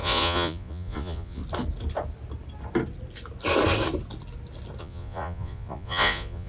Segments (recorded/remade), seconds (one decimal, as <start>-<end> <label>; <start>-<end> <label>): 0.0-1.4 remade; 1.4-4.8 recorded; 4.8-6.5 remade